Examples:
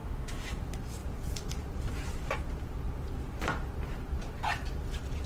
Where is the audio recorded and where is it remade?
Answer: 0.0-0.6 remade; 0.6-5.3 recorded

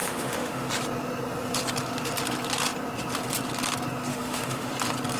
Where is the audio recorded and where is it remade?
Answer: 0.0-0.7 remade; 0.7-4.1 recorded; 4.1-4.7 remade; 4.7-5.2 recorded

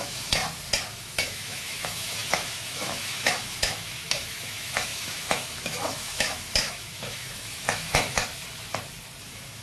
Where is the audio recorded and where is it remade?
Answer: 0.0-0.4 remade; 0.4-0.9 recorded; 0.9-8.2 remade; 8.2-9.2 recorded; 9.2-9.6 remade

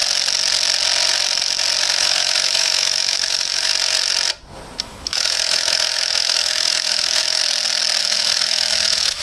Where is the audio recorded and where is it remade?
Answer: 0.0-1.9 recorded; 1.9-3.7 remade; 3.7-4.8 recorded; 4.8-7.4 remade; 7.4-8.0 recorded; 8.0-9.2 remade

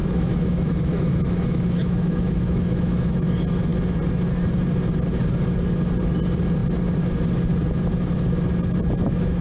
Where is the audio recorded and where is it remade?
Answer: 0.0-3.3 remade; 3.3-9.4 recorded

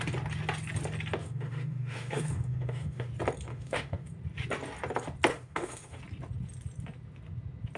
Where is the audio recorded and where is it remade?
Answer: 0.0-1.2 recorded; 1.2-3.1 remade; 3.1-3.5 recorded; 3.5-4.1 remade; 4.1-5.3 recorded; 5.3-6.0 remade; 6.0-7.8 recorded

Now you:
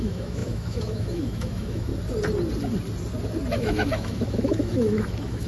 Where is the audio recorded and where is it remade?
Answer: 0.0-1.9 remade; 1.9-3.5 recorded; 3.5-5.5 remade